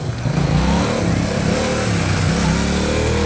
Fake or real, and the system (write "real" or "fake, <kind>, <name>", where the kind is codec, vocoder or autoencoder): real